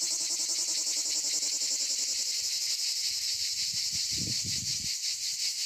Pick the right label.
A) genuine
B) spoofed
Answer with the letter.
A